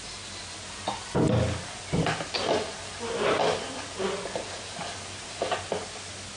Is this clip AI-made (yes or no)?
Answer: no